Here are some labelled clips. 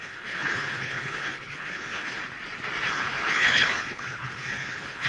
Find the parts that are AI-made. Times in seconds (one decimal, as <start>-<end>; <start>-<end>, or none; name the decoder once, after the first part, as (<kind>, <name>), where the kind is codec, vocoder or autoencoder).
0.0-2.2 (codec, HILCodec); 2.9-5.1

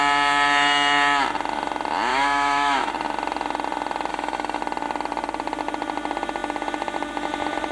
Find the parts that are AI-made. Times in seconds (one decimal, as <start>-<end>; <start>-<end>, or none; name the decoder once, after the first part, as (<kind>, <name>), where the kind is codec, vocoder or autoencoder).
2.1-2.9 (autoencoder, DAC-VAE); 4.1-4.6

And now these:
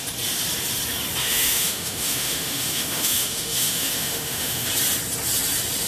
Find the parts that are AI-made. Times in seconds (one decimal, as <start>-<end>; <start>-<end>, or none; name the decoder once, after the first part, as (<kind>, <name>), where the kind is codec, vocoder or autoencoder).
1.2-4.7 (autoencoder, DAC-VAE)

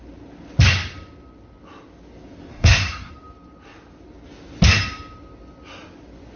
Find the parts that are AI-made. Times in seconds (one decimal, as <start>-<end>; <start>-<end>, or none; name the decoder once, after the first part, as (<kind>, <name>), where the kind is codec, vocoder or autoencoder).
2.5-3.1 (codec, SNAC)

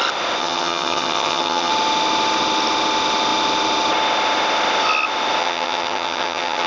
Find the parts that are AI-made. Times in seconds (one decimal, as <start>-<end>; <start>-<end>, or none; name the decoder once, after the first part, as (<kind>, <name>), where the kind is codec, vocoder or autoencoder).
0.4-1.7 (vocoder, HiFi-GAN); 5.4-6.7